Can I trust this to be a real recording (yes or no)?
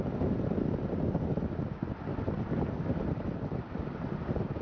yes